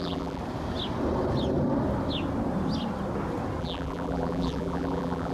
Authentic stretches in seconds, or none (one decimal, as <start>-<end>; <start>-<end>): 0.4-3.6